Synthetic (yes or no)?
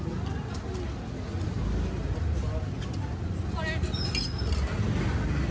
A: no